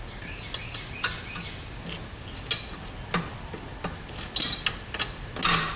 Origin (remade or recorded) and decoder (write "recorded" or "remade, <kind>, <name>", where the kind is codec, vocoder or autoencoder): recorded